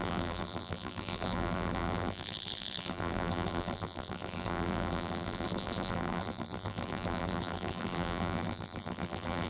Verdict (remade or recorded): remade